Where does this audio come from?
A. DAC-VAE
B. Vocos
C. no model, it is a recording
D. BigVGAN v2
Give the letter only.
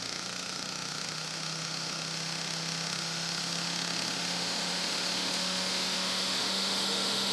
A